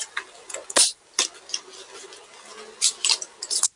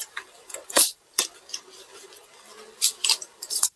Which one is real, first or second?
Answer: first